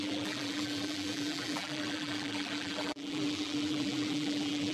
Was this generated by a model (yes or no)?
yes